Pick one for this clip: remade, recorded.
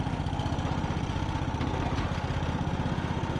recorded